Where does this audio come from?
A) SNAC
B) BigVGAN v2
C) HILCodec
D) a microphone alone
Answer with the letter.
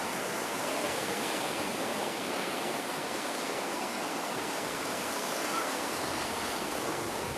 A